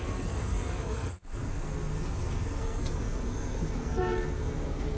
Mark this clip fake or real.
fake